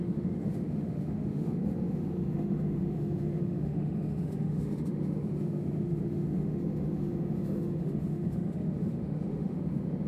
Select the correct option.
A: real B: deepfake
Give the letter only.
B